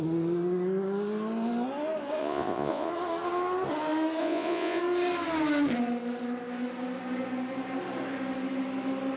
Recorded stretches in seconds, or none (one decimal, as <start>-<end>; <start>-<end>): 0.0-2.2; 2.9-4.2; 4.8-9.2